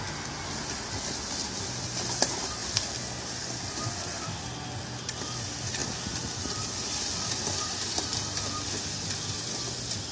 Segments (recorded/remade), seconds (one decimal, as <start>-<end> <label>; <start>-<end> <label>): 0.0-10.1 recorded